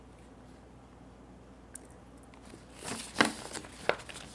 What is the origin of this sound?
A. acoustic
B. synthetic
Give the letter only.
A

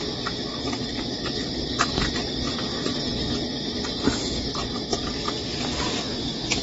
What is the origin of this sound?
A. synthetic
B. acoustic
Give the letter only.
B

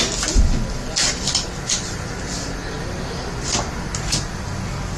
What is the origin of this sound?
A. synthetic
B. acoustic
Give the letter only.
B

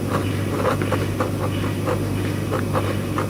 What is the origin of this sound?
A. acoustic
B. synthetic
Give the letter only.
A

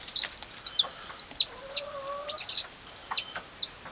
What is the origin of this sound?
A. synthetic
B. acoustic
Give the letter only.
B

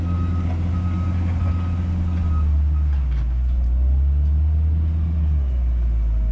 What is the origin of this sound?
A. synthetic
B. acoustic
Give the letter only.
B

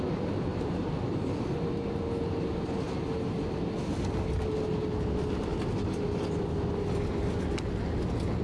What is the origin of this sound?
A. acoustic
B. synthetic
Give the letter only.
A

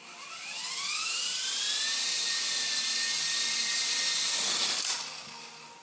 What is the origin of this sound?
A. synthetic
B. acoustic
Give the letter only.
B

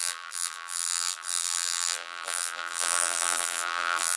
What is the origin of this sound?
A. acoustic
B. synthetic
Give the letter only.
B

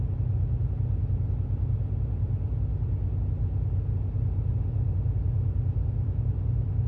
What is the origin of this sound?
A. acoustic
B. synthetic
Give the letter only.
A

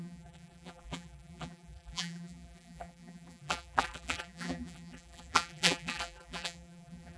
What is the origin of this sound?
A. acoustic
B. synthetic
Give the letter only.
B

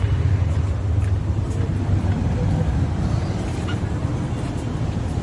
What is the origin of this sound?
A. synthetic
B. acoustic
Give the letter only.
B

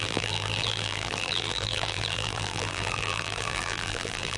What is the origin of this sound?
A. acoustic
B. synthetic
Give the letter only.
B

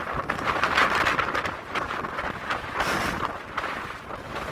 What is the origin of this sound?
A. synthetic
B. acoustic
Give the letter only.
B